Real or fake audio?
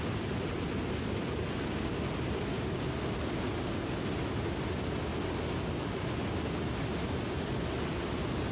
real